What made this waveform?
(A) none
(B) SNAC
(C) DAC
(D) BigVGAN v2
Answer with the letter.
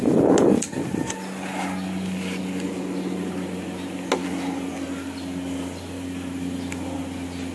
A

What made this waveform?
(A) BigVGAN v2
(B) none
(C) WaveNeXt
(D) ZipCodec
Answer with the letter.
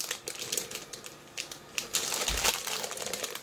B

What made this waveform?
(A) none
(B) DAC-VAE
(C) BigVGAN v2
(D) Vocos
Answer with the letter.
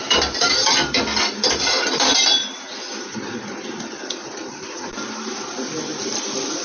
C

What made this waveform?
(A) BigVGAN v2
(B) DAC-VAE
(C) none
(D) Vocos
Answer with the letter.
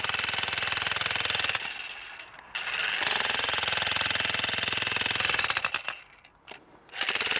C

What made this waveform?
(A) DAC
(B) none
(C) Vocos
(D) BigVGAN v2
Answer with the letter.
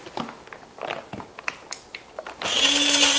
B